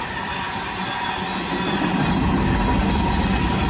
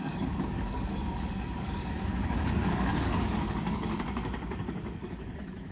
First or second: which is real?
first